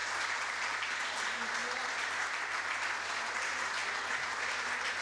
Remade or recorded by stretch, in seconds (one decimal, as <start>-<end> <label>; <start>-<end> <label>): 0.0-1.2 recorded; 1.2-3.8 remade; 3.8-5.0 recorded